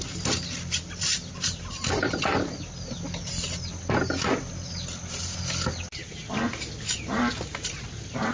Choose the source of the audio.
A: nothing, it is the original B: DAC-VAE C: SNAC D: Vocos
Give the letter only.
A